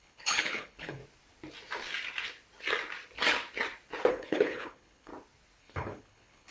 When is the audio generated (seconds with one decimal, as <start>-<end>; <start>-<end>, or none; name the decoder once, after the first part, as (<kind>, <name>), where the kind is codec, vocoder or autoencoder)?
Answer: 0.0-1.0 (codec, HILCodec); 4.1-5.1; 5.6-6.5